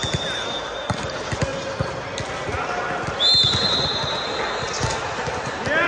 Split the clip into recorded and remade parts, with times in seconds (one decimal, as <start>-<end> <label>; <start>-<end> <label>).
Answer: 0.0-5.9 recorded